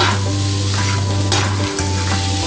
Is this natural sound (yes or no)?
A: yes